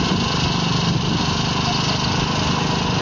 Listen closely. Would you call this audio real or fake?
real